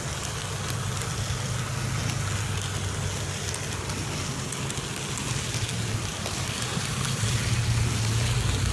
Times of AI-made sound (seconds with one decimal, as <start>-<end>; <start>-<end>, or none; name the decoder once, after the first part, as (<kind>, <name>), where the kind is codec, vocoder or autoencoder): 6.1-7.4 (vocoder, BigVGAN v2)